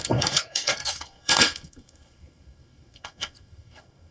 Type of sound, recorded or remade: remade